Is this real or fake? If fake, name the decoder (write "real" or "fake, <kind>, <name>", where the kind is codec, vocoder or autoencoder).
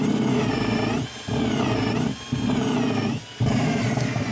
fake, vocoder, BigVGAN v2